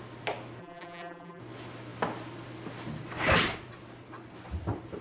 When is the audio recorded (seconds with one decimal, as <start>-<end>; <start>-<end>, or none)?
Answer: 0.0-0.6; 1.4-5.0